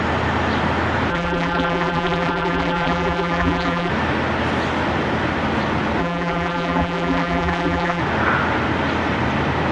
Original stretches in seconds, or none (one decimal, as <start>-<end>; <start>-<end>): 0.0-1.1; 3.9-6.0; 8.0-9.7